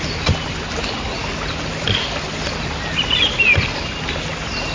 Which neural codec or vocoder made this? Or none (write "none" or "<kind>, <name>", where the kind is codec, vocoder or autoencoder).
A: none